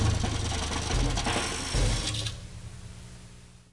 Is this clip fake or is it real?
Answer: real